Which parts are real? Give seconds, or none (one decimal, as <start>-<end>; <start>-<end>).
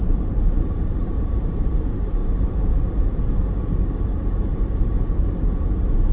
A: 2.2-3.6; 4.5-5.2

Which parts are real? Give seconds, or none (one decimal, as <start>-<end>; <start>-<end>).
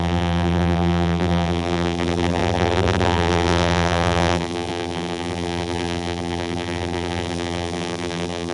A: none